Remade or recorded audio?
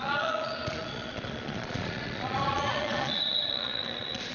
remade